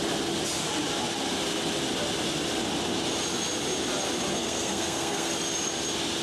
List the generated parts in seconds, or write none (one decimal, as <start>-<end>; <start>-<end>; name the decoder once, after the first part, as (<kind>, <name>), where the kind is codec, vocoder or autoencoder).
4.3-5.3 (codec, SNAC)